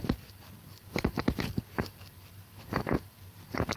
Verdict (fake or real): fake